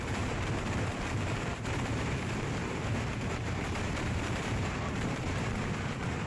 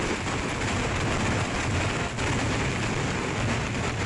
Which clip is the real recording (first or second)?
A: second